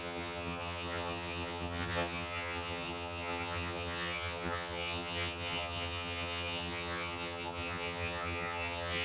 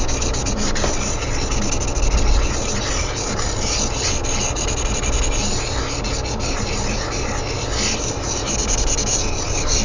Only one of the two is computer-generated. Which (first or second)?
first